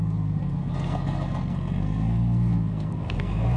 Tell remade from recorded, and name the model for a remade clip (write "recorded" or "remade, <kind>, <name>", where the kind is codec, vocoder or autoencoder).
remade, codec, SNAC